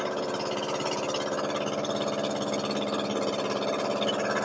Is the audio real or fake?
real